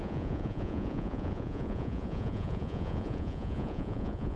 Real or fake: fake